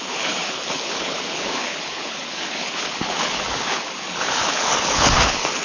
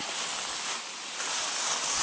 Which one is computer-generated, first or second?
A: first